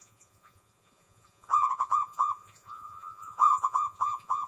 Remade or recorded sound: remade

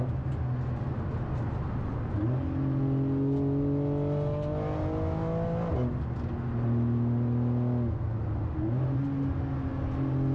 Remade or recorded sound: recorded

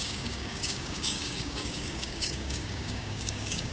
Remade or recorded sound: remade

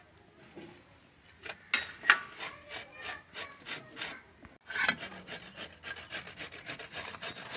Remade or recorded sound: recorded